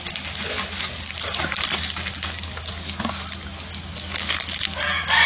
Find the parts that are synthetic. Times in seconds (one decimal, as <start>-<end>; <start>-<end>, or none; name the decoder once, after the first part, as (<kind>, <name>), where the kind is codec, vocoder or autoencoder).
3.7-4.3 (codec, DAC)